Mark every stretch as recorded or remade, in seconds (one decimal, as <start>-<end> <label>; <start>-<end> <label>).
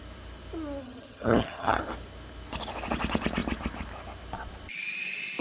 0.0-0.8 recorded; 0.8-1.8 remade; 1.8-5.4 recorded